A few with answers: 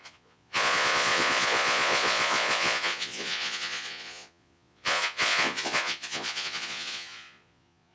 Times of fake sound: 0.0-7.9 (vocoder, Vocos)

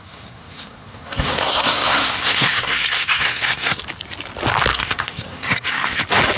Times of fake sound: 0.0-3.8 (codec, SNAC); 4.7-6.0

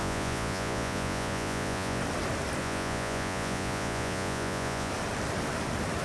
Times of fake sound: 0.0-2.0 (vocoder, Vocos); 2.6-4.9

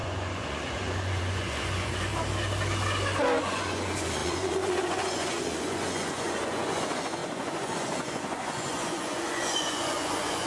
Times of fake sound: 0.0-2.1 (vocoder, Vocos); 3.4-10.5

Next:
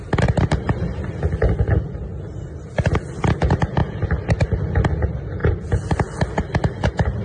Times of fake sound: none